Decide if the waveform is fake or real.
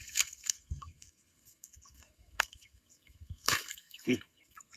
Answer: fake